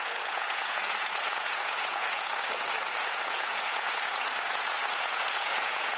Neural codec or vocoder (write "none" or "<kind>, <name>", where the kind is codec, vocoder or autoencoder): vocoder, Vocos